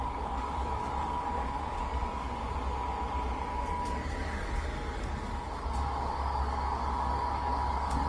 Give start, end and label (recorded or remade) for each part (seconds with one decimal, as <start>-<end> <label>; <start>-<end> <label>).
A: 0.0-2.4 remade; 2.4-3.5 recorded; 3.5-8.1 remade